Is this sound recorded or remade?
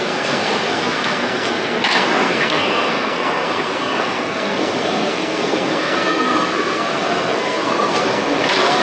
remade